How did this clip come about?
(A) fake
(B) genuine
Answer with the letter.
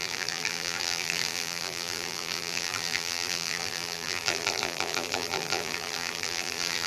A